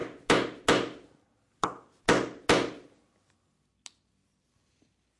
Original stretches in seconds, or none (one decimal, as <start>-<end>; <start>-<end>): 0.0-5.2